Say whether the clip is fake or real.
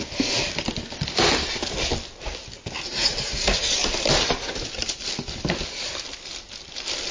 real